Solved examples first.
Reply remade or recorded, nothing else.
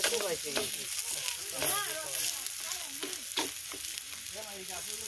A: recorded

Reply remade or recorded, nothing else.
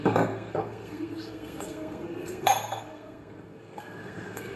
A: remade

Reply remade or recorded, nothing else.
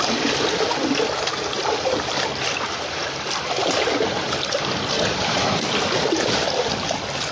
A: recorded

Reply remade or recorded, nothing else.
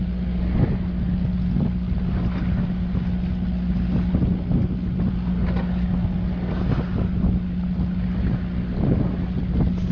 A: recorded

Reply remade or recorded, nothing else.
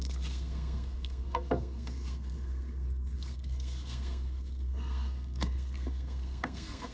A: remade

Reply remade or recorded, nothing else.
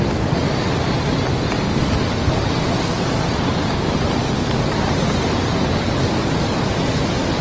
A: recorded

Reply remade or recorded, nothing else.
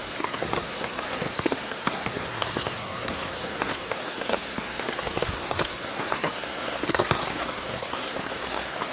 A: remade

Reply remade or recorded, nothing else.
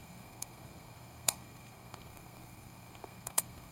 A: remade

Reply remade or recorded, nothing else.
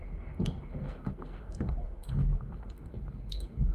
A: remade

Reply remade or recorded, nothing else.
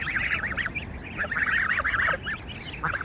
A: recorded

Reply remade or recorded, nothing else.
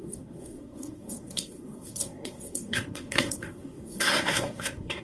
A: remade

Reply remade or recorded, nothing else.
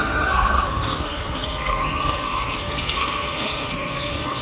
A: remade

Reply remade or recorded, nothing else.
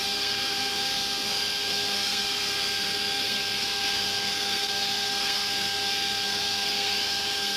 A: remade